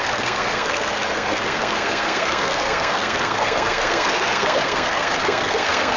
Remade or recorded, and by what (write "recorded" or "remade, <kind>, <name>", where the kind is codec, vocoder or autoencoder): remade, codec, SNAC